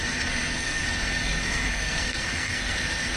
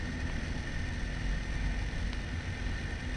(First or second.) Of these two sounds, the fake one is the first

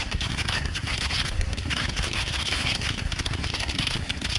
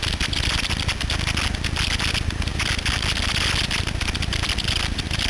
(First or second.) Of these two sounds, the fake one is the first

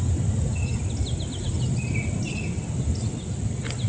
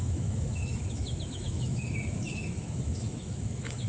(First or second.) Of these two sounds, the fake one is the second